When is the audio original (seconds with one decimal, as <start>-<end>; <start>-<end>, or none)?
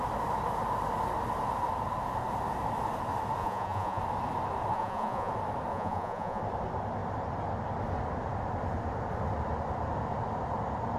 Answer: 0.0-3.4; 4.0-4.7; 5.3-5.7; 6.4-11.0